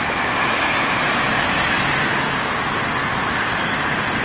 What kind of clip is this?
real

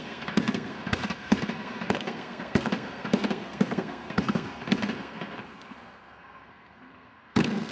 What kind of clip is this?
fake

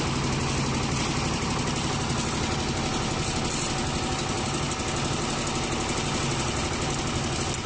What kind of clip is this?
real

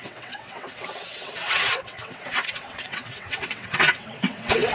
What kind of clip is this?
fake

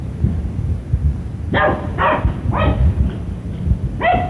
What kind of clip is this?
real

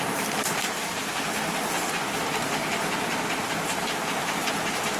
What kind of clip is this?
fake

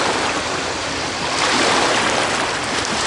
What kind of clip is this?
real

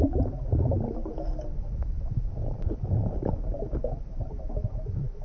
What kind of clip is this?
real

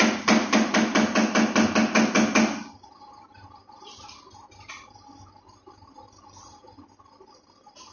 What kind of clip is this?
real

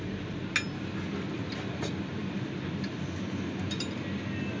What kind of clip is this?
real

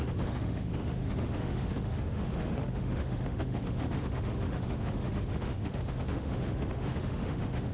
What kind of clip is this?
fake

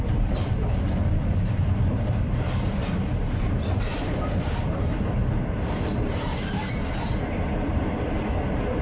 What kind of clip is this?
fake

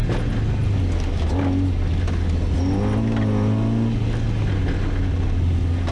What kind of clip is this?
real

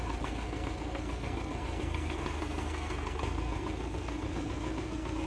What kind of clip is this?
fake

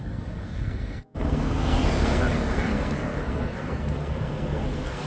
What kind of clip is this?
fake